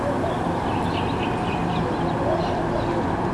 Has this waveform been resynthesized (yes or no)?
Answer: no